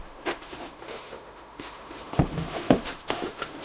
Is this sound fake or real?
fake